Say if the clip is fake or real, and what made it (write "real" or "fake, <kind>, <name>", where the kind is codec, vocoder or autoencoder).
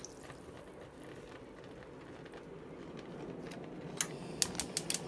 real